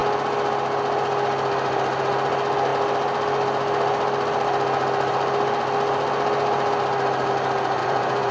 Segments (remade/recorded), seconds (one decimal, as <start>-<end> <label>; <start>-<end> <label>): 0.0-7.8 recorded; 7.8-8.3 remade